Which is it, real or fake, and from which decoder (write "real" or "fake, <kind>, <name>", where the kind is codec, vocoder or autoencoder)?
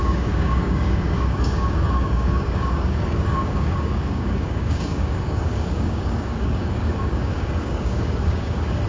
fake, codec, DAC